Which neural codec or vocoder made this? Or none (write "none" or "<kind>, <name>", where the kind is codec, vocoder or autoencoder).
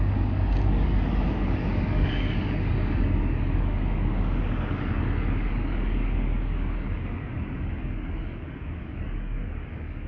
codec, DAC